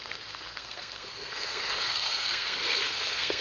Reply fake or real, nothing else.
fake